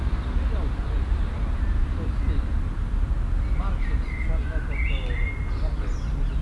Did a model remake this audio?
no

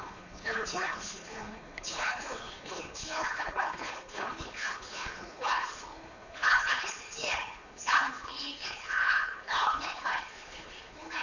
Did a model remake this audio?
yes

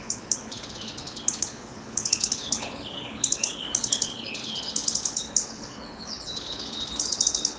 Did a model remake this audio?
yes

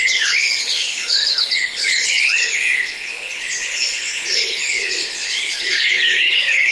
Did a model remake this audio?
yes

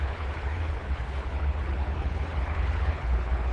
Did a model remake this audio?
yes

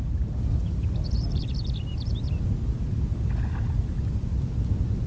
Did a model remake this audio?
no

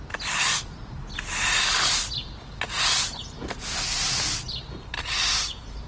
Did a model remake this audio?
no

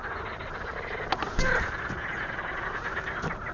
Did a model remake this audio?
no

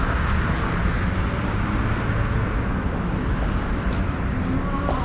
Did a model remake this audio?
no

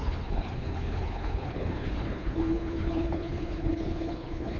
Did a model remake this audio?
yes